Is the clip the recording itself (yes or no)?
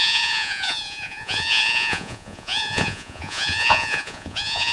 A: no